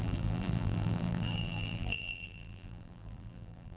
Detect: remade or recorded remade